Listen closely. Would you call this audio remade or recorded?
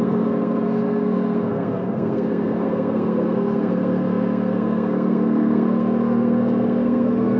remade